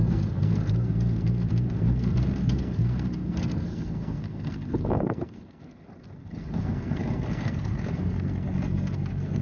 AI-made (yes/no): yes